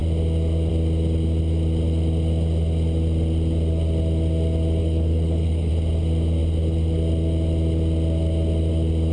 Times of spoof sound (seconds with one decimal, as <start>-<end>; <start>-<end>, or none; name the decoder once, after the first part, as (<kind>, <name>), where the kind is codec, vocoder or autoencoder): 4.8-5.7 (codec, HILCodec)